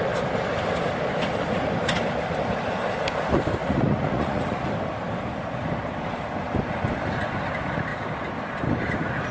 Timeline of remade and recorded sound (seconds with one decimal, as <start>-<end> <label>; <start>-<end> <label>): 0.0-3.6 recorded; 3.6-4.6 remade; 4.6-9.3 recorded